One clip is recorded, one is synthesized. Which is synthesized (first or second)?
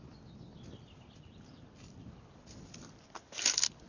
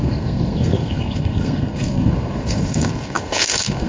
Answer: second